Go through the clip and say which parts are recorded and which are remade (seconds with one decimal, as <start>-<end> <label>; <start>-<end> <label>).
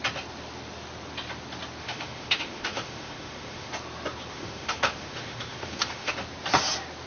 0.0-1.8 recorded; 1.8-3.7 remade; 3.7-4.3 recorded; 4.3-6.1 remade; 6.1-7.1 recorded